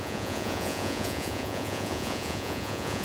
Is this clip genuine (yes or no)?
no